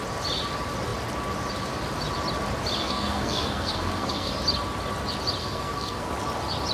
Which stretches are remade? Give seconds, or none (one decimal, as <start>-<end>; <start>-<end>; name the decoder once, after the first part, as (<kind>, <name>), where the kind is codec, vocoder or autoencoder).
2.8-4.3 (codec, SNAC); 5.4-6.1